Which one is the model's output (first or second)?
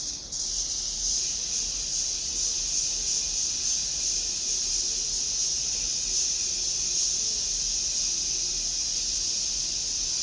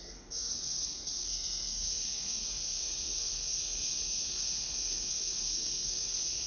second